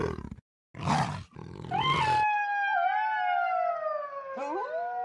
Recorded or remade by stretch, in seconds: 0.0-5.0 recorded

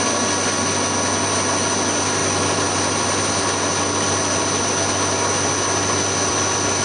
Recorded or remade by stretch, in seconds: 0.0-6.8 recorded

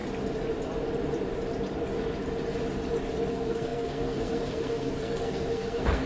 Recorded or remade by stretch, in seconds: 0.0-3.3 recorded; 3.3-6.1 remade